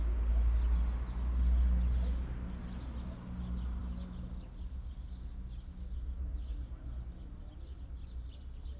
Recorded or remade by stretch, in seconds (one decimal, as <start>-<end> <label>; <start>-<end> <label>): 0.0-8.8 recorded